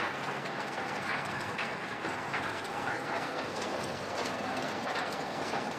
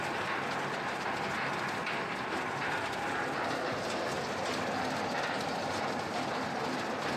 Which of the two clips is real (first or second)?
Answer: second